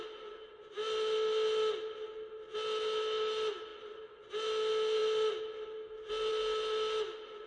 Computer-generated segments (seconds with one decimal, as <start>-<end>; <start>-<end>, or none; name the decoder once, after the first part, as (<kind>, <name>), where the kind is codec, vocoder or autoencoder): none